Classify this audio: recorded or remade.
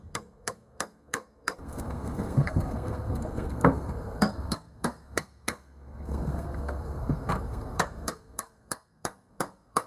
remade